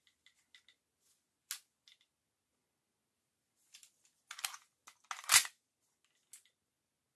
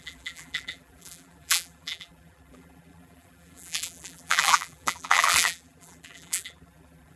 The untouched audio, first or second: first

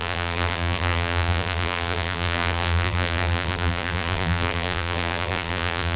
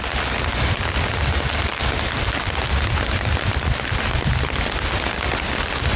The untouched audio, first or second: second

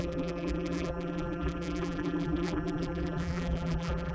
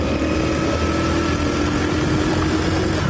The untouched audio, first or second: second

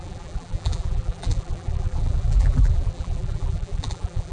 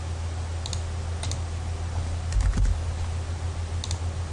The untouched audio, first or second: second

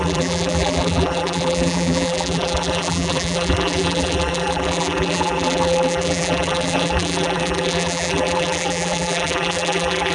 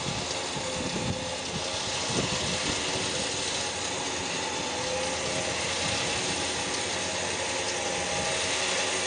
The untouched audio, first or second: second